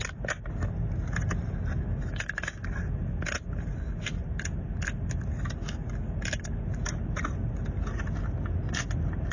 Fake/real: real